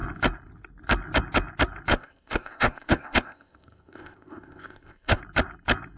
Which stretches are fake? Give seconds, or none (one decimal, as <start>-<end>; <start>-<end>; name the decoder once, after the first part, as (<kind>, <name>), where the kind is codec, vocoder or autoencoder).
1.9-5.2 (codec, ZipCodec)